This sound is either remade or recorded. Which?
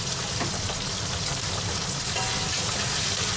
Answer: recorded